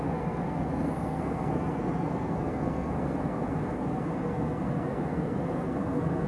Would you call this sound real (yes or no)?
no